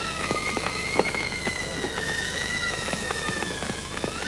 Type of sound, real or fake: fake